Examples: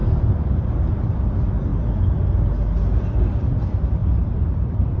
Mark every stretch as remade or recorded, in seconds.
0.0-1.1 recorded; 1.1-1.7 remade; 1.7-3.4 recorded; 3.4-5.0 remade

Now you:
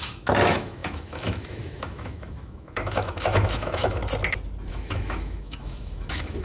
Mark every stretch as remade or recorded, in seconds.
0.0-4.0 remade; 4.0-4.7 recorded; 4.7-6.4 remade